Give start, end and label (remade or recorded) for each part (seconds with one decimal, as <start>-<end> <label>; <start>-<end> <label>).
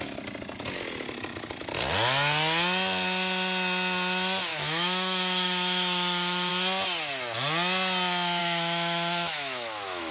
0.0-4.5 recorded; 4.5-6.5 remade; 6.5-8.4 recorded; 8.4-10.1 remade